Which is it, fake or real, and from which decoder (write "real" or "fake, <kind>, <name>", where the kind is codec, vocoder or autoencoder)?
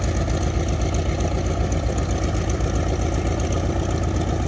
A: real